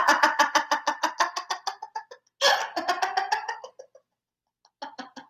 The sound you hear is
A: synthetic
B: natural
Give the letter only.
B